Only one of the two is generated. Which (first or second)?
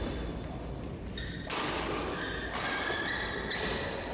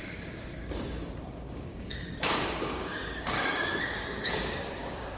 second